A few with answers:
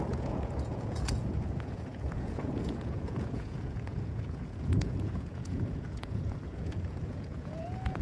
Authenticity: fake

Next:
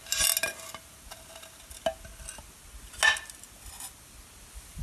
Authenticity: real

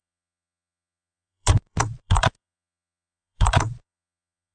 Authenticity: fake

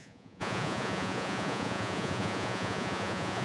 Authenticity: fake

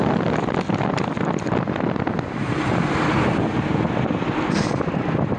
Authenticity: real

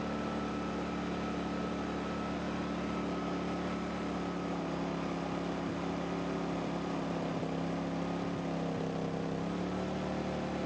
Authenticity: real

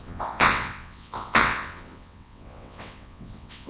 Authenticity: fake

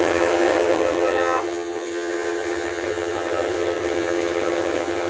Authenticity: fake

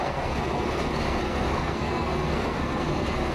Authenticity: fake